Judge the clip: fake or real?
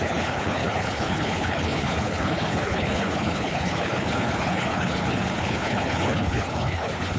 fake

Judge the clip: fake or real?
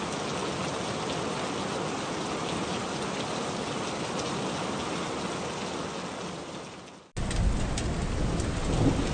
real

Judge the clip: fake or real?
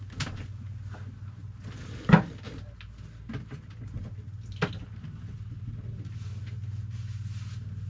real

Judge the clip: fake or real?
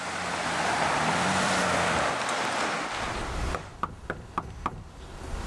fake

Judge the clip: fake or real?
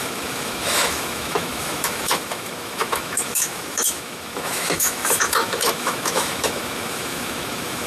fake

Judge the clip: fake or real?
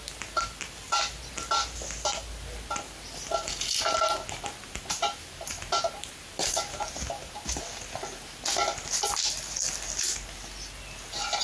real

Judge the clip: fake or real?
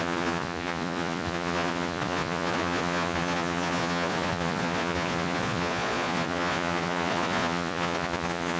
fake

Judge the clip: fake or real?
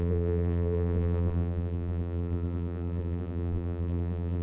fake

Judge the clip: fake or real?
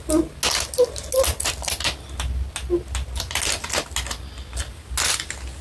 real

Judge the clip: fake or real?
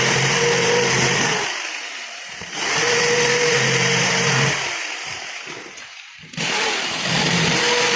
fake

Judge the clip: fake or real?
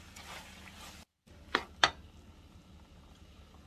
real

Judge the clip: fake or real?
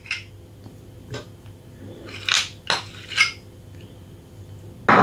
real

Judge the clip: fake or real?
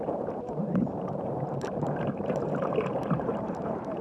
fake